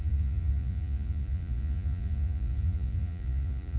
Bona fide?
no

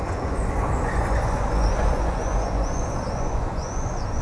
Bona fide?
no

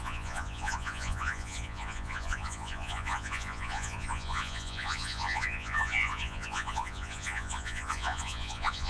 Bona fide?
no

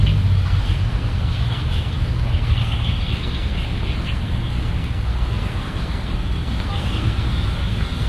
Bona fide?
no